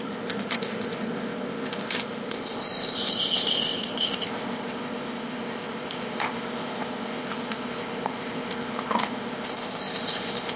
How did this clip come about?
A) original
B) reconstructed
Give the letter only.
B